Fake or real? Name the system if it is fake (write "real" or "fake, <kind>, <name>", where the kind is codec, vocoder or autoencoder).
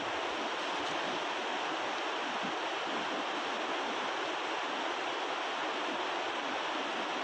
real